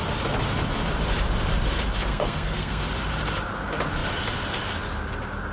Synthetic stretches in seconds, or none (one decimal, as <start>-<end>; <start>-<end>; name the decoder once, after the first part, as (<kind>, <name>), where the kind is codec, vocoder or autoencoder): 2.1-2.8 (codec, SNAC)